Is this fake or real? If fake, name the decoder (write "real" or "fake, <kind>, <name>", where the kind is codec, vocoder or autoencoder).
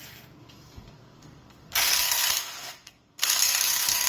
fake, codec, SNAC